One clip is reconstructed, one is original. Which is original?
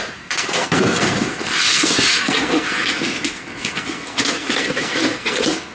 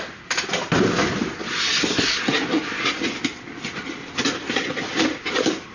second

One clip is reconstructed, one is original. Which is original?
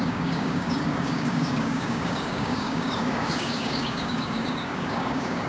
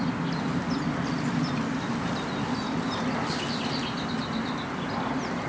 second